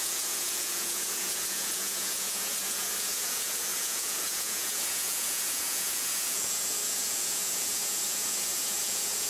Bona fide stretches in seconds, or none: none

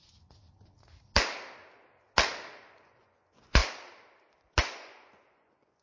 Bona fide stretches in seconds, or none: 0.0-2.6; 3.6-4.6

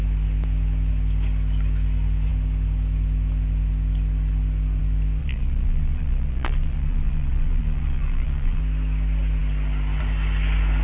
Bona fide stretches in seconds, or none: 0.0-5.2; 8.6-10.8

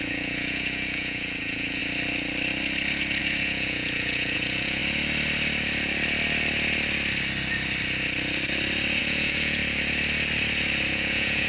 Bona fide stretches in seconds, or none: 1.8-3.2; 4.8-9.0; 9.6-10.9